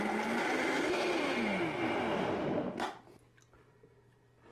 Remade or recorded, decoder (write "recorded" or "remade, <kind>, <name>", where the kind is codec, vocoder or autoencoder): recorded